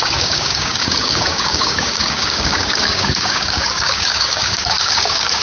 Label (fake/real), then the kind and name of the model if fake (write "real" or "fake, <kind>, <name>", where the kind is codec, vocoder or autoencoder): fake, codec, DAC